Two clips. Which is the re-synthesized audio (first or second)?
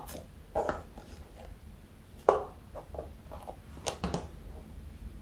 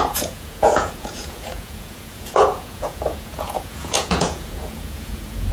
second